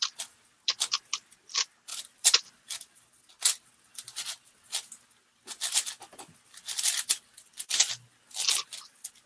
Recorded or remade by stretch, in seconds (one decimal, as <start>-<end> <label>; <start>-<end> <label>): 0.0-1.9 recorded; 1.9-2.6 remade; 2.6-3.9 recorded; 3.9-4.5 remade; 4.5-9.3 recorded